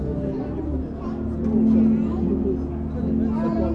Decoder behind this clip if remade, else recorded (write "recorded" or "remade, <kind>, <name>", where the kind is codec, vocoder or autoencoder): recorded